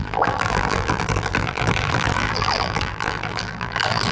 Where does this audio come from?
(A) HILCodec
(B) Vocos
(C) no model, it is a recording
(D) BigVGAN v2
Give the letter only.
D